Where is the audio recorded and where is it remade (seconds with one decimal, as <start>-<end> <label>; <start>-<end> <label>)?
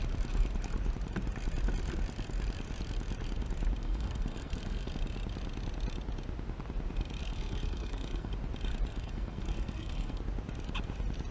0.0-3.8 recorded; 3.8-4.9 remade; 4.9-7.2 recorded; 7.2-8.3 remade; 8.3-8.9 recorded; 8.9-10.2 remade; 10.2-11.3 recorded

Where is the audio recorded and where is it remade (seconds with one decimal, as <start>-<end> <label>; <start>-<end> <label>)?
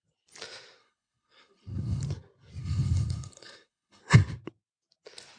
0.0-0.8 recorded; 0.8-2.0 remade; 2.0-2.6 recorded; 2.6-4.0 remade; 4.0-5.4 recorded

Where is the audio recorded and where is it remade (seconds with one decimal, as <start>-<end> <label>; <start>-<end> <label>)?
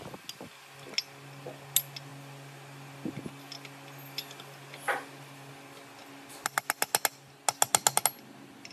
0.0-8.7 recorded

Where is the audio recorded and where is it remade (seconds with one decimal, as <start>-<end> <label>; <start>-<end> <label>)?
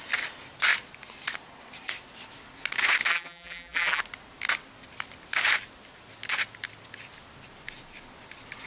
0.0-3.1 recorded; 3.1-4.0 remade; 4.0-8.7 recorded